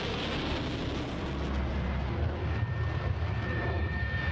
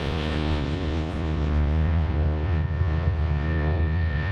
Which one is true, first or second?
first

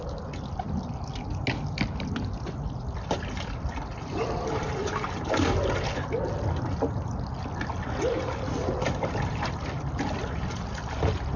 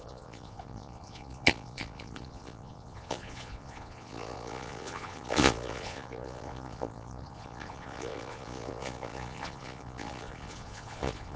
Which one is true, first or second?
first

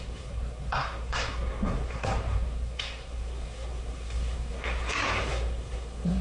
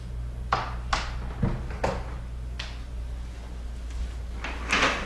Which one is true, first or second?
second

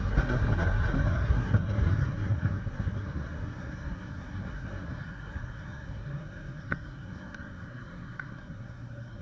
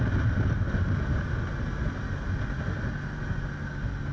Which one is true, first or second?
second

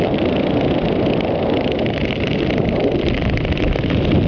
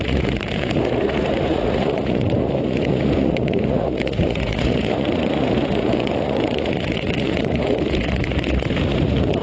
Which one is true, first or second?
first